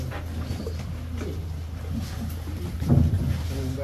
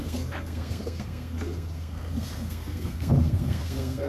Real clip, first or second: first